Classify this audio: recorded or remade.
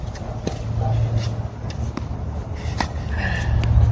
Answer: recorded